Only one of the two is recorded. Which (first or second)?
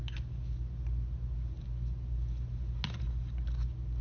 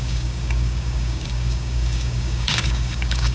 first